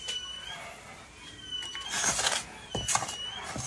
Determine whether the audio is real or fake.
real